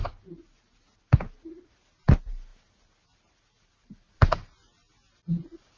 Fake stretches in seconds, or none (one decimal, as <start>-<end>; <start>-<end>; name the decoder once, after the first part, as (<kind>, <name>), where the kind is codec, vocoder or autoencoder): none